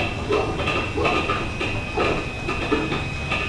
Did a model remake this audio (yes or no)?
no